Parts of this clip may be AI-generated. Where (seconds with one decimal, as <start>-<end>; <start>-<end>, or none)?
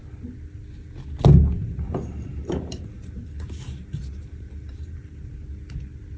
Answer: 1.6-5.3